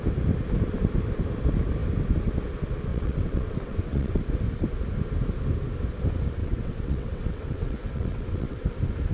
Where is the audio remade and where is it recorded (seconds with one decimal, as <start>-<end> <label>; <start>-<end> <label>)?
0.0-2.9 recorded; 2.9-4.2 remade; 4.2-6.4 recorded; 6.4-8.6 remade; 8.6-9.1 recorded